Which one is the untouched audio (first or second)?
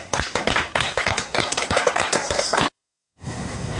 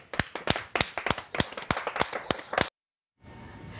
second